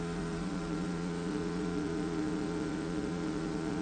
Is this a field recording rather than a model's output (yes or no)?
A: no